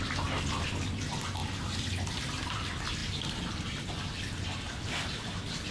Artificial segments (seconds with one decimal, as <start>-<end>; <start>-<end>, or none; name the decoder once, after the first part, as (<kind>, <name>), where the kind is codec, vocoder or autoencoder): none